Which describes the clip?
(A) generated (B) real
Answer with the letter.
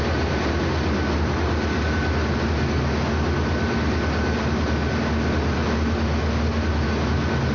B